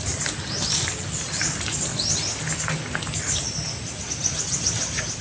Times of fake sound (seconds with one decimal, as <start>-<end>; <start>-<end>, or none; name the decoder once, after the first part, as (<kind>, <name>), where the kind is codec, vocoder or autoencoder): none